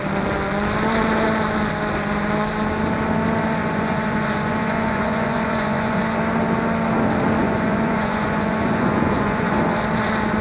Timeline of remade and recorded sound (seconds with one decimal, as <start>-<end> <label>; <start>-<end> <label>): 0.0-3.6 recorded; 3.6-6.0 remade; 6.0-7.4 recorded; 7.4-9.6 remade; 9.6-10.4 recorded